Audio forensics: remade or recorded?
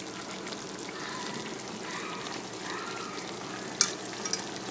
recorded